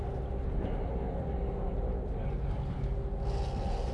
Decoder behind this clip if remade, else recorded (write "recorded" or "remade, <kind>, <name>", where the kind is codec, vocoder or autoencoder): recorded